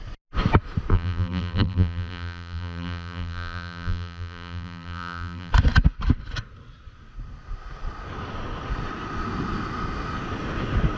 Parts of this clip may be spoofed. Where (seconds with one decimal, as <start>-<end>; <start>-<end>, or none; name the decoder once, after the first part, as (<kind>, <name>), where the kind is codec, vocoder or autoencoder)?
0.9-5.5 (vocoder, BigVGAN v2)